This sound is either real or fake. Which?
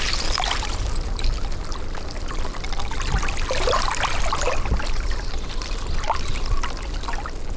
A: real